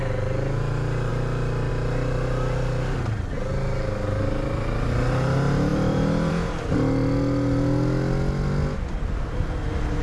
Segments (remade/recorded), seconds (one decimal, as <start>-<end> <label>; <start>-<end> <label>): 0.0-5.7 recorded; 5.7-6.3 remade; 6.3-10.0 recorded